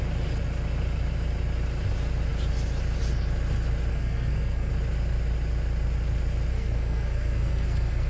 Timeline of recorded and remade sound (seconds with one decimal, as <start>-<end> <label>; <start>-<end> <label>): 0.0-3.9 recorded; 3.9-4.7 remade; 4.7-6.5 recorded; 6.5-8.1 remade